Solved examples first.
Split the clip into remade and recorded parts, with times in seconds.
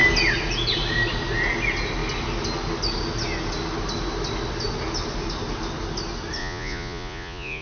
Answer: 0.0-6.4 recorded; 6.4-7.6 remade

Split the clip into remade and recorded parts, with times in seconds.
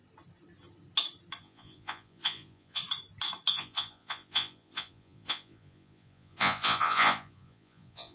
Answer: 0.0-1.4 recorded; 1.4-2.8 remade; 2.8-3.5 recorded; 3.5-8.1 remade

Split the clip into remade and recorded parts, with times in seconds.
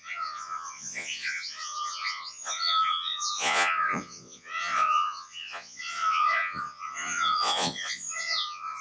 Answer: 0.0-8.8 remade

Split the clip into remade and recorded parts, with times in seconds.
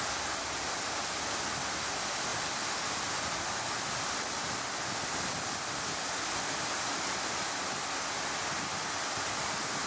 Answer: 0.0-9.9 recorded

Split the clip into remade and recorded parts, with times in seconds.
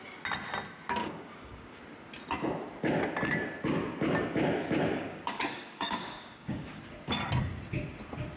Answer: 0.0-1.0 recorded; 1.0-1.8 remade; 1.8-4.9 recorded; 4.9-6.8 remade; 6.8-8.4 recorded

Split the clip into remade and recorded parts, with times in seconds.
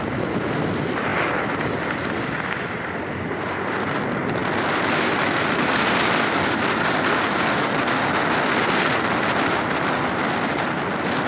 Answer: 0.0-11.3 recorded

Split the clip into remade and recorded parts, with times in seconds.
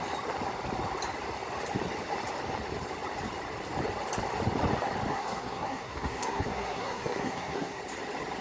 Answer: 0.0-5.1 recorded; 5.1-7.8 remade; 7.8-8.4 recorded